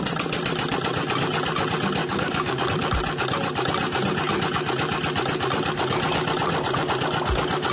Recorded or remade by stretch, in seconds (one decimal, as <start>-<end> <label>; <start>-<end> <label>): 0.0-2.0 recorded; 2.0-2.7 remade; 2.7-7.7 recorded